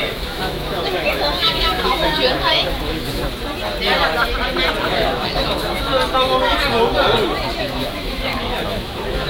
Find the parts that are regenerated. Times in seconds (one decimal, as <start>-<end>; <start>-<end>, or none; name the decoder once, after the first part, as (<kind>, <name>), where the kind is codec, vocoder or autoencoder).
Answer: 0.0-3.2 (autoencoder, DAC-VAE); 4.9-5.9; 7.6-9.3